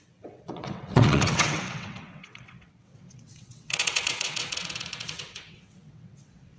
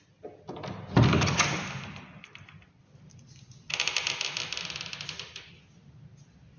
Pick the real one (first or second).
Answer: second